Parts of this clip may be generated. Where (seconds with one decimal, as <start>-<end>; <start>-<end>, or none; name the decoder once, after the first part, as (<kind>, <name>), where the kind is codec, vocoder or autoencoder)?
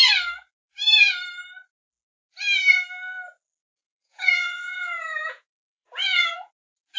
3.6-6.5 (vocoder, Vocos)